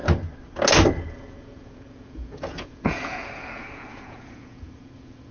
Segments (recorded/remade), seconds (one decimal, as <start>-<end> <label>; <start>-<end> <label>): 0.0-1.0 recorded; 1.0-5.3 remade